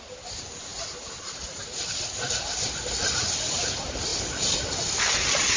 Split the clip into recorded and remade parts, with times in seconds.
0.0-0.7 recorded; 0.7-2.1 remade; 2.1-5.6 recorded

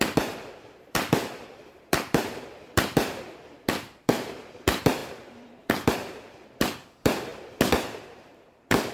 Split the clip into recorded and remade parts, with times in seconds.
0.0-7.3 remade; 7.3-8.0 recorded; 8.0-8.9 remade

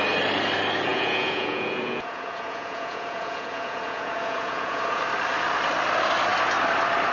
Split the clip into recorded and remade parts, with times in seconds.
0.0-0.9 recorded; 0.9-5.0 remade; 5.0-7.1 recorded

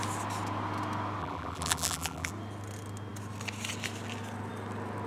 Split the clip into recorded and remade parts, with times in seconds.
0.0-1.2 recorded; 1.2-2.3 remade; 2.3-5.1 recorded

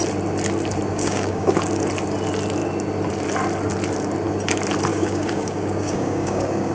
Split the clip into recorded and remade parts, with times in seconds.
0.0-0.9 recorded; 0.9-1.5 remade; 1.5-4.9 recorded; 4.9-6.7 remade